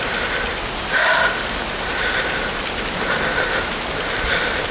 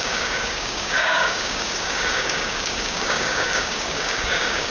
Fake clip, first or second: second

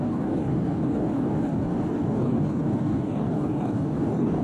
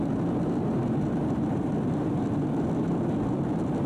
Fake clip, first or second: first